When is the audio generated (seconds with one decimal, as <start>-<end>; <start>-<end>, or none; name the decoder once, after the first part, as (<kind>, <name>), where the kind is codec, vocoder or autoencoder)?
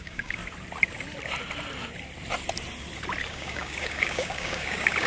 0.0-0.4 (codec, DAC); 3.3-5.1